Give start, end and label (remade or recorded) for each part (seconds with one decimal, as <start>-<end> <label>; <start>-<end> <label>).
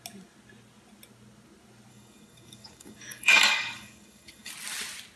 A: 0.0-1.9 recorded; 1.9-4.5 remade; 4.5-5.2 recorded